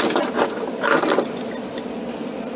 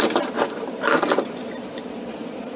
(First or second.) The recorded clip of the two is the first